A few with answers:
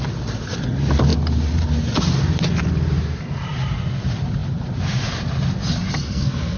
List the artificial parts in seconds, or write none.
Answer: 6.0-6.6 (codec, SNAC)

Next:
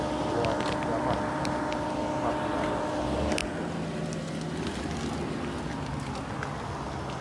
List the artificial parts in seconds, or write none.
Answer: none

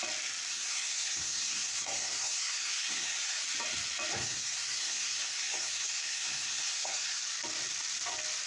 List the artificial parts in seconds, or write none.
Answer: 0.5-3.4 (codec, SNAC); 4.2-7.2

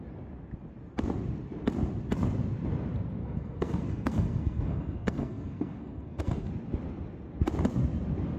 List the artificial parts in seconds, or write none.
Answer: 3.2-6.5 (codec, SNAC)

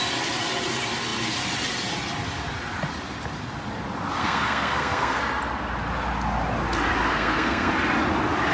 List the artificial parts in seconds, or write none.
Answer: 4.2-5.2 (codec, SNAC); 7.0-7.7

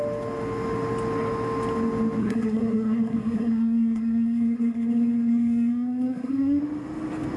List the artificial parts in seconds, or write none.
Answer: 2.2-6.6 (codec, SNAC)

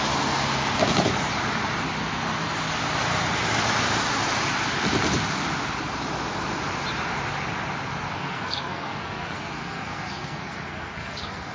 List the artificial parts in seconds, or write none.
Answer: 8.1-11.5 (codec, SNAC)